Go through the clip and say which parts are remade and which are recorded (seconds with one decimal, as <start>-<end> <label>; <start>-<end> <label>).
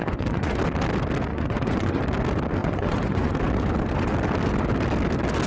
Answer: 0.0-0.6 remade; 0.6-1.3 recorded; 1.3-2.0 remade; 2.0-2.6 recorded; 2.6-3.3 remade; 3.3-5.5 recorded